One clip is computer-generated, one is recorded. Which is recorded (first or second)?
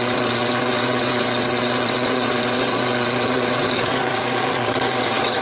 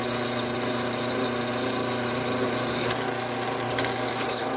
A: second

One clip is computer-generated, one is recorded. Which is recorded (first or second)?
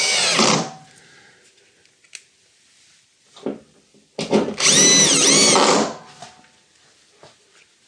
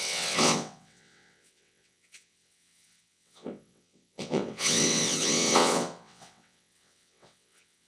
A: first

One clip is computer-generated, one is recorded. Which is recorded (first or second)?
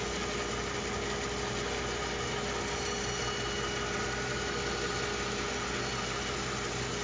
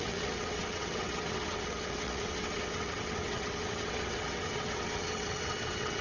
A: first